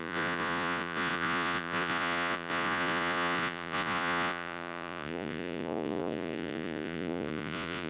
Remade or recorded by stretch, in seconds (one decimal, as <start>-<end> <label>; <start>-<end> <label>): 0.0-7.9 remade